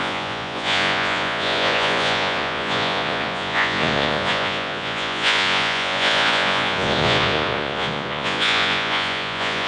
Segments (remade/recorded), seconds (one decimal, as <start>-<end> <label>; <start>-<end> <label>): 0.0-9.7 remade